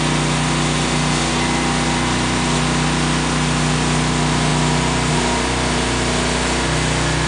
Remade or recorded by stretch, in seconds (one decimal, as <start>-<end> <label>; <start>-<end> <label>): 0.0-7.3 recorded